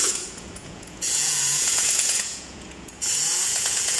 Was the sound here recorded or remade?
remade